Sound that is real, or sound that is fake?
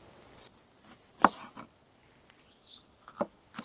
real